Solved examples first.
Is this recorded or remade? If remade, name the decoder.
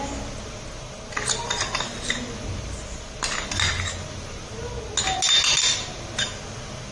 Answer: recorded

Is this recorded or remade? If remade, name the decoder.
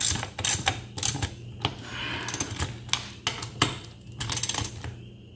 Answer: recorded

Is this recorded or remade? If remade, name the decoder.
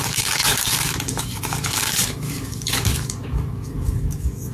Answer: remade, codec, DAC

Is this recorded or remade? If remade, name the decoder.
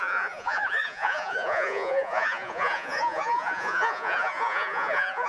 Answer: remade, vocoder, Vocos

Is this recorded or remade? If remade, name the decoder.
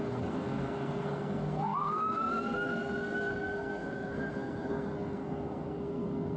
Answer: remade, codec, SNAC